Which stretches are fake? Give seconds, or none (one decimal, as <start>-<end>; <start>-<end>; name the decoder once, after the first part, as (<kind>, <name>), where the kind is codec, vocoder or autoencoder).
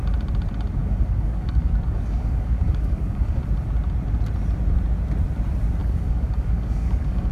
0.8-3.4 (codec, DAC); 5.8-7.3